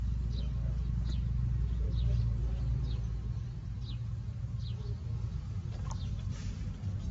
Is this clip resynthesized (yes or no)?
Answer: no